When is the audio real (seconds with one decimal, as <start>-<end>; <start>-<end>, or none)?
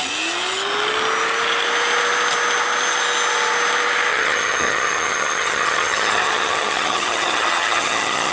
0.0-4.1